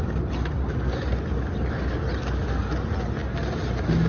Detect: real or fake real